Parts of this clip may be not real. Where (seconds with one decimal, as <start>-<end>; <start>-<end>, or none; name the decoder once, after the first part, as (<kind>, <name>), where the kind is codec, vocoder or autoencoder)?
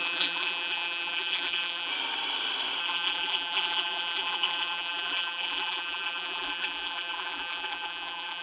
0.0-1.9 (vocoder, BigVGAN v2); 2.8-8.4